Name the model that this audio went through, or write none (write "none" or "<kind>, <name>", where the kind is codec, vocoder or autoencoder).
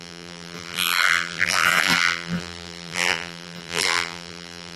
vocoder, BigVGAN v2